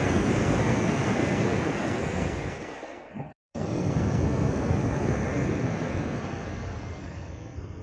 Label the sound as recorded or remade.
remade